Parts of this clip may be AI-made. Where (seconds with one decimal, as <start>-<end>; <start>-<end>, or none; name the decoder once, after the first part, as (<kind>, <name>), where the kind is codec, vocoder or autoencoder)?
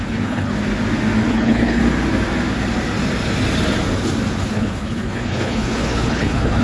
0.0-0.5 (codec, HILCodec); 1.3-1.8; 4.4-6.6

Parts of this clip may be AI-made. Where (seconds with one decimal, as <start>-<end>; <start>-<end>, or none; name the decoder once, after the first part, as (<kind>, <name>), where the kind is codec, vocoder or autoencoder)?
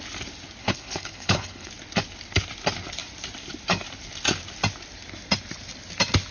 0.6-1.7 (codec, HILCodec)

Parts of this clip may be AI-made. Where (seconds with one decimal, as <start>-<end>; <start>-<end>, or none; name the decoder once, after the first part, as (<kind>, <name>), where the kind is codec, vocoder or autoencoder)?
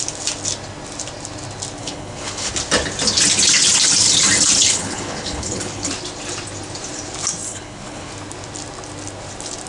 1.8-2.5 (codec, HILCodec); 4.6-5.9; 7.5-8.1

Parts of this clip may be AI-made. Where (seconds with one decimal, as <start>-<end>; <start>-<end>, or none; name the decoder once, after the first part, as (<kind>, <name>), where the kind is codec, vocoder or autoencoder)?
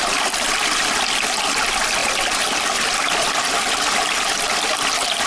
none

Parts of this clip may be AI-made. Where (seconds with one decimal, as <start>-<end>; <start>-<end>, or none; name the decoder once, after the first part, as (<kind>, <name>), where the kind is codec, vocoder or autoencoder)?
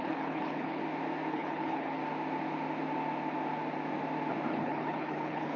0.0-0.8 (codec, HILCodec); 1.3-2.0; 4.5-5.6